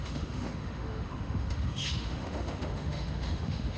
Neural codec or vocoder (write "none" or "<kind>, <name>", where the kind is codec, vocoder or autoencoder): autoencoder, DAC-VAE